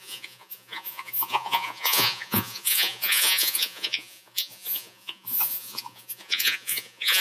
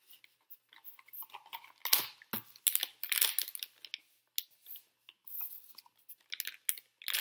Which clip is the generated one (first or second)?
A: first